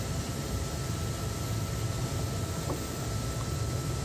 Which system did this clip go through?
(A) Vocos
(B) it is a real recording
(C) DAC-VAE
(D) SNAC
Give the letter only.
B